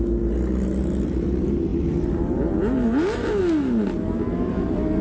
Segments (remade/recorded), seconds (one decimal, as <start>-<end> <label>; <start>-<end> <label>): 0.0-5.0 recorded